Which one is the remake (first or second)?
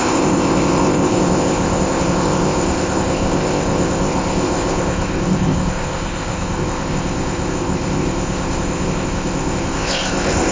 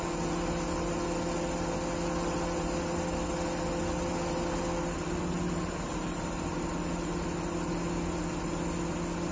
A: first